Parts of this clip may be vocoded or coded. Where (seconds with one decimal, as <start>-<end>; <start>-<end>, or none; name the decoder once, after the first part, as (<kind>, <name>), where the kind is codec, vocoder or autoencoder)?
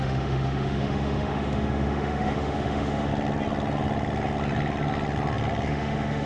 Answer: 0.0-3.1 (autoencoder, DAC-VAE); 5.7-6.3